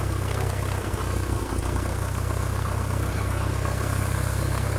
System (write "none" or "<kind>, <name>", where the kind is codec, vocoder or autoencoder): codec, SNAC